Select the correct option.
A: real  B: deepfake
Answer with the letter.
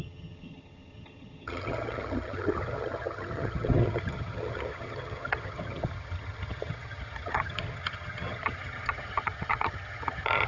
B